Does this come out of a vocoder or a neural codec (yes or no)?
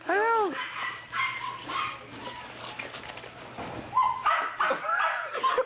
no